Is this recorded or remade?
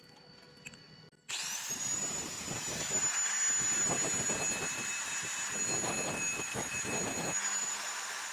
recorded